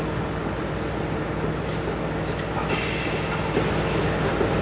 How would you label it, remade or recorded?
recorded